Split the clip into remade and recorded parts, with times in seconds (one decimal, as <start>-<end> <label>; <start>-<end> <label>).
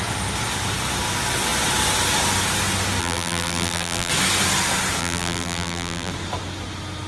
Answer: 0.0-3.0 recorded; 3.0-4.1 remade; 4.1-5.0 recorded; 5.0-6.1 remade; 6.1-7.1 recorded